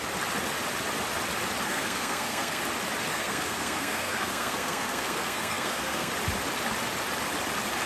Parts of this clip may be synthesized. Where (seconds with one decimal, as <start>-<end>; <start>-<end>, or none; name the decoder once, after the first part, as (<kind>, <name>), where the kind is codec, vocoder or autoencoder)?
1.7-2.6 (codec, SNAC); 3.1-6.1